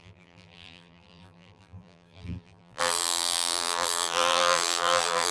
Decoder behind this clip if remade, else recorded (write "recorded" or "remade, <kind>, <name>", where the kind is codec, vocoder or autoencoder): remade, vocoder, BigVGAN v2